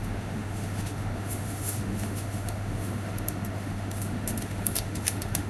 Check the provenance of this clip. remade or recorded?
remade